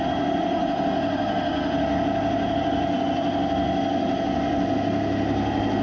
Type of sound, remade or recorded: recorded